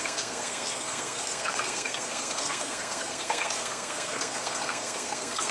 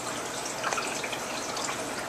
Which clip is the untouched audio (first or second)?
second